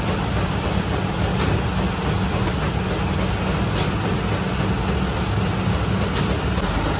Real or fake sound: real